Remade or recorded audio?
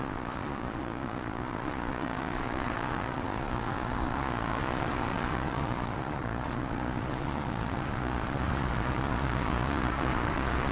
remade